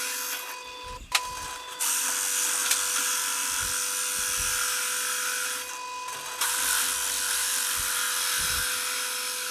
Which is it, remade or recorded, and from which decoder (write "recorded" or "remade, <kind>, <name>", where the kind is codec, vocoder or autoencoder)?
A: recorded